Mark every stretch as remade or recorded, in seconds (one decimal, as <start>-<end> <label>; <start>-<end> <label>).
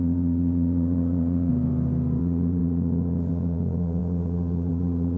0.0-1.5 remade; 1.5-2.2 recorded; 2.2-5.2 remade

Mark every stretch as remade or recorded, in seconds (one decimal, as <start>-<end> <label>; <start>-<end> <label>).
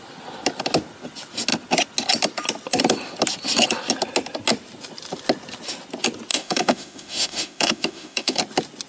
0.0-6.3 recorded; 6.3-8.4 remade; 8.4-8.9 recorded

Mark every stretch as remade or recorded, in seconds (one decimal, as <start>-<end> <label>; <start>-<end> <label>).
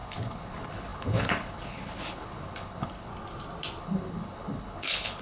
0.0-3.1 remade; 3.1-3.8 recorded; 3.8-5.2 remade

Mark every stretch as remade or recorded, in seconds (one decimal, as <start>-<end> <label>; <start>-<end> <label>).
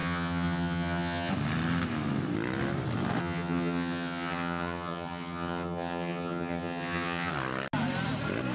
0.0-1.3 remade; 1.3-3.2 recorded; 3.2-7.3 remade; 7.3-8.5 recorded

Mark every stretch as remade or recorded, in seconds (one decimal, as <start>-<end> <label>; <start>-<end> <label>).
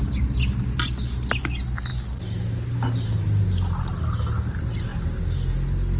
0.0-6.0 recorded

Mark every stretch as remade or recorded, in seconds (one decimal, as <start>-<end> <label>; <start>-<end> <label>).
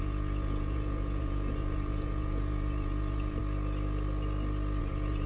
0.0-3.4 remade; 3.4-4.8 recorded; 4.8-5.3 remade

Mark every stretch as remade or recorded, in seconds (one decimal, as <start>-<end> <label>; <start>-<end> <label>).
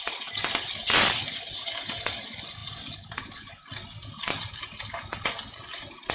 0.0-6.1 recorded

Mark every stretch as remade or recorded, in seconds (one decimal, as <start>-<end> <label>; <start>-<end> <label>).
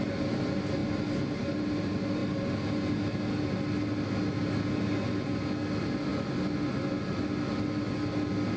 0.0-8.6 recorded